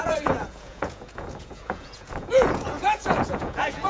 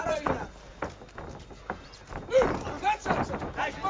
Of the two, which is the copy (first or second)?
first